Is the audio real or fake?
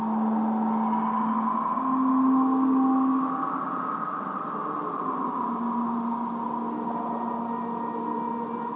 real